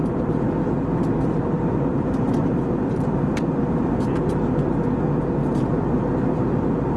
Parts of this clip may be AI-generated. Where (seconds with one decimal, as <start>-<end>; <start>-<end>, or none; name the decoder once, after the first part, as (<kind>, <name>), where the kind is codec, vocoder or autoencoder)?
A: 0.0-0.5 (vocoder, BigVGAN v2); 1.9-4.0; 5.4-6.1

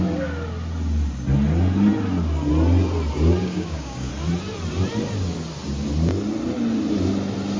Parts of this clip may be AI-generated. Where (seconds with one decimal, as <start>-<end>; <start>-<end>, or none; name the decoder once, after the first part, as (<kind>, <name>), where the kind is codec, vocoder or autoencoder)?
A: 3.4-4.1 (codec, DAC)

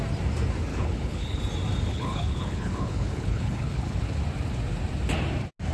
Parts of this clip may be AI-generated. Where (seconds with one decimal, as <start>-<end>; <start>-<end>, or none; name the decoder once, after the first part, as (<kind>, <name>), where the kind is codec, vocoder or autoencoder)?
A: 0.7-1.4 (codec, HILCodec); 1.9-4.2